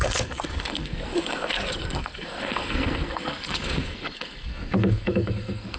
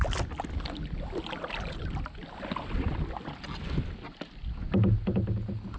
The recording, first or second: second